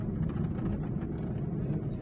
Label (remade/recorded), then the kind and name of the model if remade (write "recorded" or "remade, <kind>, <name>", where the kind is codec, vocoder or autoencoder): recorded